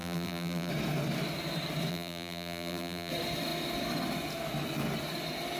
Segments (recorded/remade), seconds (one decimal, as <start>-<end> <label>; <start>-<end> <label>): 0.0-0.7 remade; 0.7-1.9 recorded; 1.9-3.1 remade; 3.1-5.6 recorded